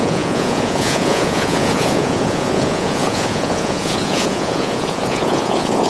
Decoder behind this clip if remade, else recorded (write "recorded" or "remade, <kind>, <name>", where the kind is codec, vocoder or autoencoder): remade, vocoder, Vocos